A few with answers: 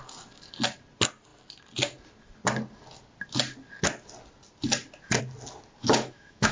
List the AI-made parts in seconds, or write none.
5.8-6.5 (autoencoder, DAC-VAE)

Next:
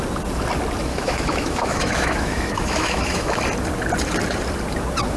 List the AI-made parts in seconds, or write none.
0.9-3.4 (autoencoder, DAC-VAE)

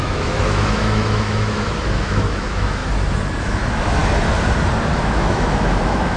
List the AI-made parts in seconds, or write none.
0.0-2.8 (autoencoder, DAC-VAE); 3.4-4.0; 4.9-6.2